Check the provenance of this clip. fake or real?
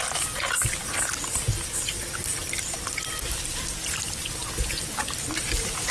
real